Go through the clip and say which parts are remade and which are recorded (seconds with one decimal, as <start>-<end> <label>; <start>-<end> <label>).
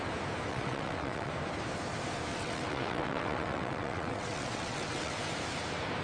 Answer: 0.0-0.5 recorded; 0.5-1.3 remade; 1.3-2.3 recorded; 2.3-5.1 remade; 5.1-6.0 recorded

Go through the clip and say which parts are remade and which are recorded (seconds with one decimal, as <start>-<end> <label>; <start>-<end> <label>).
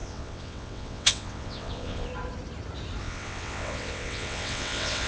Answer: 0.0-2.1 remade; 2.1-3.0 recorded; 3.0-5.1 remade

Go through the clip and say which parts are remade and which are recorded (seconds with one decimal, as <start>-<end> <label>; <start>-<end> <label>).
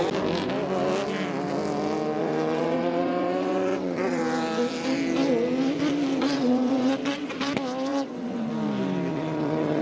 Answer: 0.0-2.2 recorded; 2.2-4.2 remade; 4.2-6.2 recorded; 6.2-7.5 remade; 7.5-7.9 recorded; 7.9-8.5 remade; 8.5-9.1 recorded; 9.1-9.8 remade